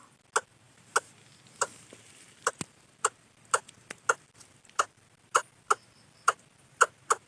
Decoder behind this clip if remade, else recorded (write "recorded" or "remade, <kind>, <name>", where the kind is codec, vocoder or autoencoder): recorded